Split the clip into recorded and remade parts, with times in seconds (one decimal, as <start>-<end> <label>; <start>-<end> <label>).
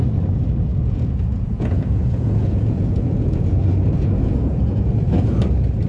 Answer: 0.0-0.7 recorded; 0.7-3.6 remade; 3.6-4.0 recorded; 4.0-4.9 remade; 4.9-5.9 recorded